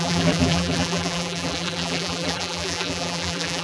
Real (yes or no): no